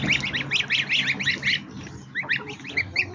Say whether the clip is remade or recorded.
recorded